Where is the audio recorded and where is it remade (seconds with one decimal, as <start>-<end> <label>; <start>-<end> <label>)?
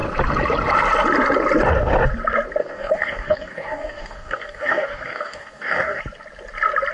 0.0-2.6 recorded; 2.6-6.0 remade; 6.0-6.9 recorded